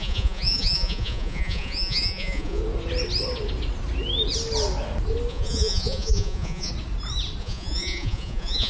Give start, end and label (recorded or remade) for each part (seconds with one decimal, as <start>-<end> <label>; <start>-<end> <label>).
0.0-2.6 remade; 2.6-5.3 recorded; 5.3-6.7 remade; 6.7-7.4 recorded; 7.4-8.7 remade